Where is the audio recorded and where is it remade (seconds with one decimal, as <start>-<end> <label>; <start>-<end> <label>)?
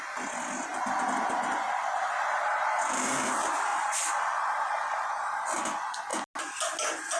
0.0-3.7 recorded; 3.7-5.1 remade; 5.1-7.2 recorded